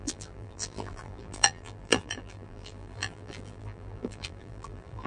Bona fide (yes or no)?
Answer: no